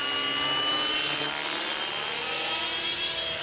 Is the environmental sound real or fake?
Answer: real